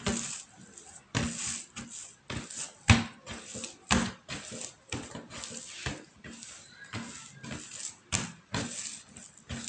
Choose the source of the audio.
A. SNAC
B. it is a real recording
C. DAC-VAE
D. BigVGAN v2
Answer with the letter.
B